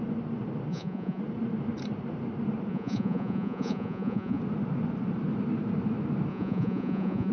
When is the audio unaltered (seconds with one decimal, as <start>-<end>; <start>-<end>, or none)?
0.0-0.7; 1.2-2.7; 4.4-6.3